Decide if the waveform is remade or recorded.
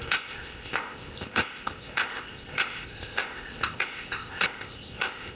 remade